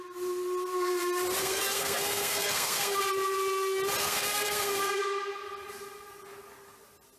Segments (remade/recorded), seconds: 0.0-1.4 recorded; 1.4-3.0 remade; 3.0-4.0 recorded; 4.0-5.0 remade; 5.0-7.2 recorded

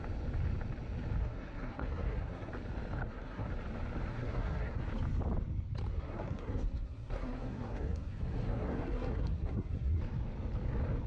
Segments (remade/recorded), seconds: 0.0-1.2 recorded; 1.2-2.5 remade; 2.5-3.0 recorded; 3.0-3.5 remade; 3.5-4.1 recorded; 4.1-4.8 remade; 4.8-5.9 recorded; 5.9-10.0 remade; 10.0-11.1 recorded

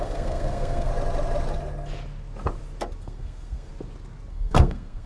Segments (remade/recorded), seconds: 0.0-0.9 remade; 0.9-3.0 recorded; 3.0-3.7 remade; 3.7-4.3 recorded; 4.3-5.1 remade